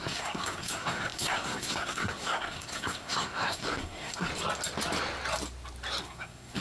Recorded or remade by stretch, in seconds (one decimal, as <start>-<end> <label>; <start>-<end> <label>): 0.0-4.3 remade; 4.3-6.0 recorded; 6.0-6.6 remade